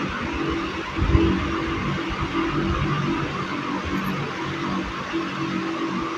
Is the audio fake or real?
real